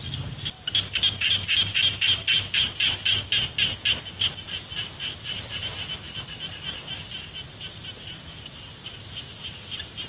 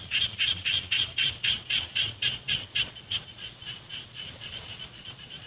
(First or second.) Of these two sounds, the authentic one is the first